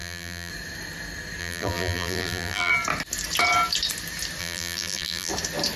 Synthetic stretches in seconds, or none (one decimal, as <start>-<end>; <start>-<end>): 0.0-0.5; 1.4-2.7; 4.4-5.3